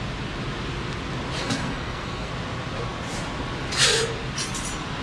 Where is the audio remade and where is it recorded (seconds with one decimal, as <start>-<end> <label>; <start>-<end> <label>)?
0.0-1.4 recorded; 1.4-2.3 remade; 2.3-5.0 recorded